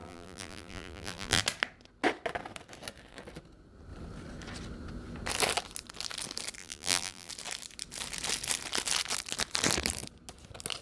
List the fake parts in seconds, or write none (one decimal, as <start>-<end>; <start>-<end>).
0.0-1.4; 6.6-7.3

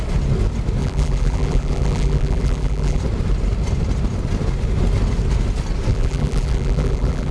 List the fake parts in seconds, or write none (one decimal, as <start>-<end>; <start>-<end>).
0.8-3.0; 5.9-7.3

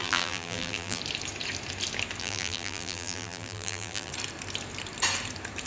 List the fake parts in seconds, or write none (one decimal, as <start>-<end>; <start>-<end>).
0.0-1.0; 2.2-4.1

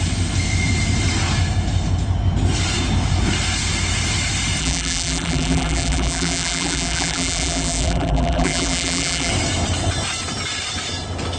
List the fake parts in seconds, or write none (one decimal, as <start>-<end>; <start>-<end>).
4.6-9.3

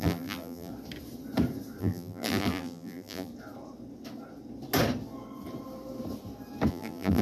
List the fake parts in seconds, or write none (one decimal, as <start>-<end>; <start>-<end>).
0.0-0.7; 1.8-3.3; 6.7-7.2